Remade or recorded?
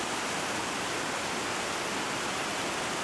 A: recorded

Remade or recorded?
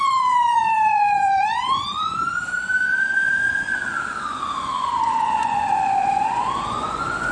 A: remade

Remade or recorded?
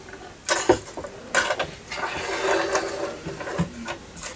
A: recorded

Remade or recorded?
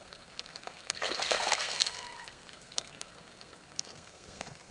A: remade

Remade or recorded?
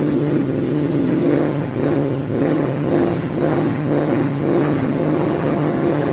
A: remade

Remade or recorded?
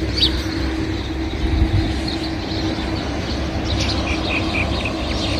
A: recorded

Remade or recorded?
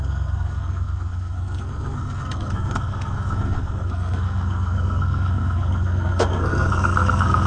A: remade